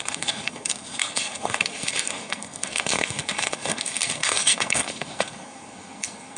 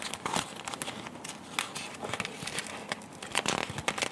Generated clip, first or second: first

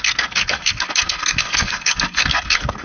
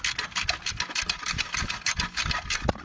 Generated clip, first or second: first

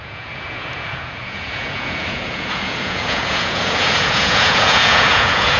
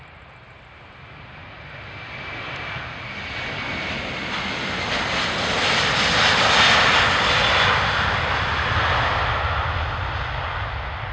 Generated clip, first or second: first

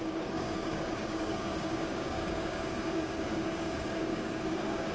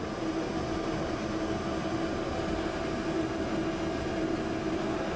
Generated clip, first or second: first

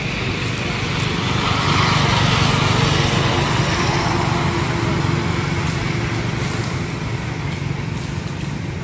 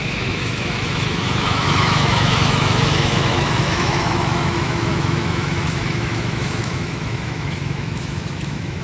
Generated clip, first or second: second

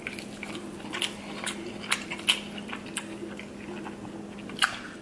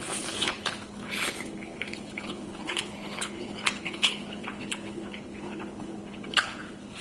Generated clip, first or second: second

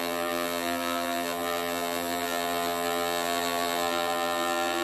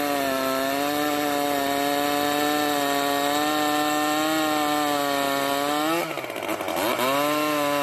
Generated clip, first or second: first